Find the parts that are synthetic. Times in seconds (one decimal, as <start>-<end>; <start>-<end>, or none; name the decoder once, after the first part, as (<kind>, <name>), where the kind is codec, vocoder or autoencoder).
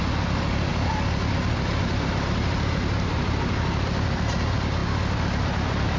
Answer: none